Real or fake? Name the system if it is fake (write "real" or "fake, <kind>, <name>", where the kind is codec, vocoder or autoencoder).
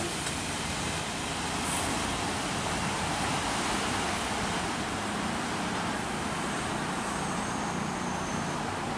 real